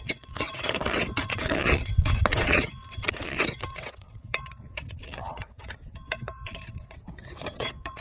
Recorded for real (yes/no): no